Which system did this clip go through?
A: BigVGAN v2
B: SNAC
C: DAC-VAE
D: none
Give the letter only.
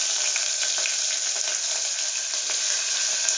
D